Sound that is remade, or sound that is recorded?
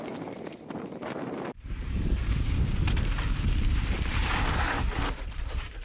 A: remade